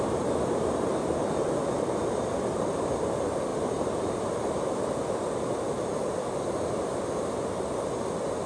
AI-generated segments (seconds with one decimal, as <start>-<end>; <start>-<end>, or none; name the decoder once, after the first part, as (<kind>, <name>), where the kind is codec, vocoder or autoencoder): none